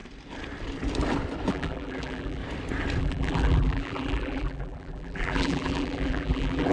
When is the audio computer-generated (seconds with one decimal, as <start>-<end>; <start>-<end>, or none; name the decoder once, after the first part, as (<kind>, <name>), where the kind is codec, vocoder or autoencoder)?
1.5-2.4 (vocoder, BigVGAN v2); 3.0-6.7